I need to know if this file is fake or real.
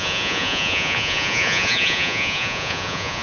fake